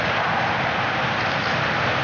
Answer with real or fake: real